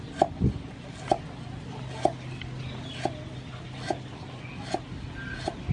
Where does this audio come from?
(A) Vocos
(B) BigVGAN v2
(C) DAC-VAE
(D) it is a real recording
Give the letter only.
D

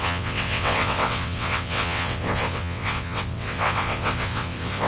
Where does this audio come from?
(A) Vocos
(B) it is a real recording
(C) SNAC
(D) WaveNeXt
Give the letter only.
D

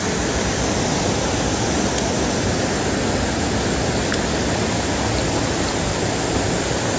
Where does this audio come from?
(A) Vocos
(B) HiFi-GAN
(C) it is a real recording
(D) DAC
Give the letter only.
C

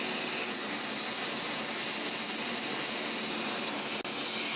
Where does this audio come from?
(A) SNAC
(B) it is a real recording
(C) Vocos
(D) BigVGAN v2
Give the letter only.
B